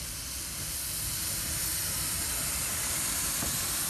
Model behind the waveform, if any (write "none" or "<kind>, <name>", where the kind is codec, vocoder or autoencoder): none